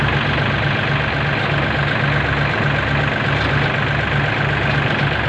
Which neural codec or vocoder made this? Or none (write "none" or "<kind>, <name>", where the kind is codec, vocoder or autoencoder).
none